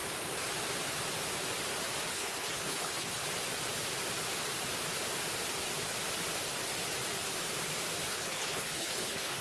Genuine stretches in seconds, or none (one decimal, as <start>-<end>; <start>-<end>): 0.0-2.1; 3.2-8.1